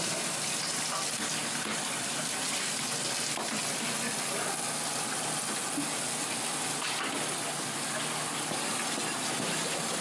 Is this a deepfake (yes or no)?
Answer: no